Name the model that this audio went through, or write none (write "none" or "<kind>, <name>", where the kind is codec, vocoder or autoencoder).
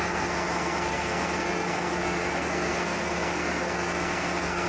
codec, SNAC